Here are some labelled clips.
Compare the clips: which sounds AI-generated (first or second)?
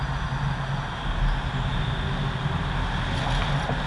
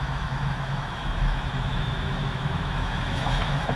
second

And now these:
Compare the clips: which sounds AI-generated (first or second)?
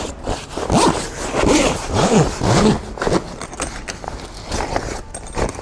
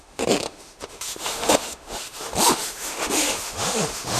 second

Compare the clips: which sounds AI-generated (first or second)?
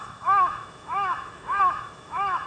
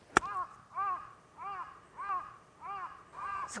first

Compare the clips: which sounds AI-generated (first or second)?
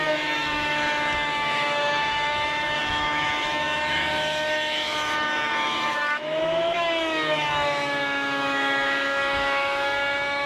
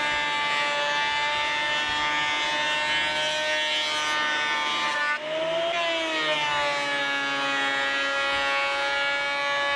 first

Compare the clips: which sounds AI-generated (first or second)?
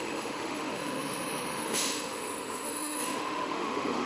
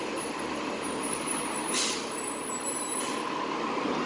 first